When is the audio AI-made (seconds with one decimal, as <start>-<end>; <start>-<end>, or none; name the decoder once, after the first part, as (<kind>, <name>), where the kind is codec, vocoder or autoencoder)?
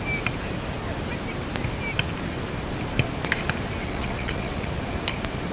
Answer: 3.8-4.7 (vocoder, WaveNeXt)